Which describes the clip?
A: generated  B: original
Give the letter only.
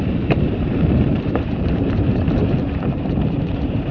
A